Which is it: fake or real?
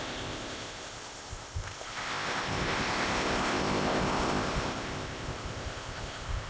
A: fake